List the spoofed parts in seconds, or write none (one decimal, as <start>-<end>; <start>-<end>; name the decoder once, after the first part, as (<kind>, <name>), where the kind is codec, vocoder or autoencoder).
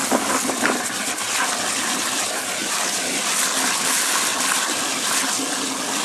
2.6-3.2 (vocoder, BigVGAN v2); 4.3-4.9